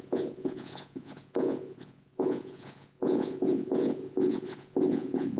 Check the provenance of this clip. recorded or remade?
remade